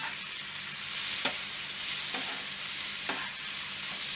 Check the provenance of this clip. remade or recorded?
recorded